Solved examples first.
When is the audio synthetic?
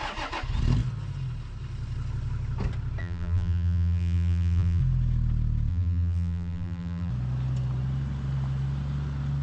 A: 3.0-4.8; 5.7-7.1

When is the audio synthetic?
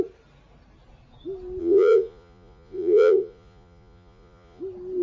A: 1.6-4.6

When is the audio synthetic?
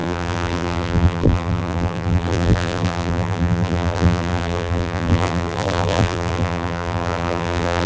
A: 0.0-7.9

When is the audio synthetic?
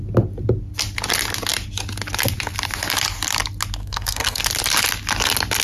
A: 3.8-4.4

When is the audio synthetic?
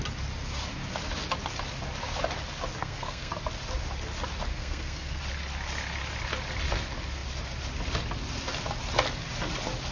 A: 2.8-3.3; 4.5-5.2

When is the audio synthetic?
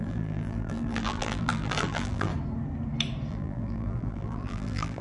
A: 0.0-2.3; 3.3-5.0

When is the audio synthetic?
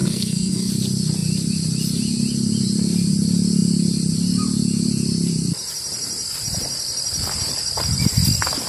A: 0.0-0.7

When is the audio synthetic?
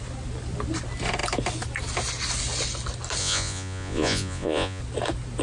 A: 3.2-4.8